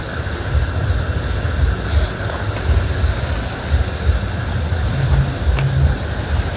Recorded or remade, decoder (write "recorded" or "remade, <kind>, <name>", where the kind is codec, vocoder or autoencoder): recorded